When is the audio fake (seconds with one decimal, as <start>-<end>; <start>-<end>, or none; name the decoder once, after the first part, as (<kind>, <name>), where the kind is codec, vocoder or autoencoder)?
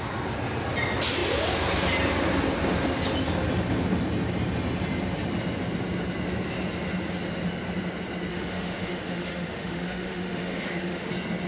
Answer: 8.3-11.1 (autoencoder, DAC-VAE)